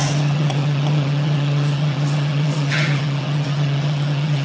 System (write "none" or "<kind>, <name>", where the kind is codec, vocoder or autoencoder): vocoder, HiFi-GAN